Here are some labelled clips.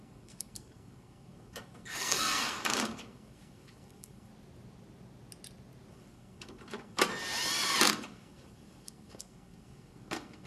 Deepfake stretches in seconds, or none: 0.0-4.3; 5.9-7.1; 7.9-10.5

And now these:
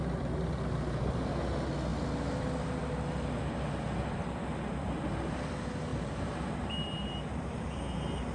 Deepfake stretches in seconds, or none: 5.9-7.8

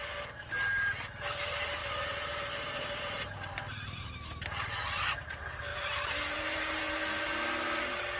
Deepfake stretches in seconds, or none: 1.8-4.0; 5.7-6.8

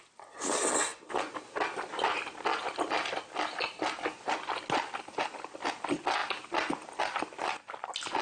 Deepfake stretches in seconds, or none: none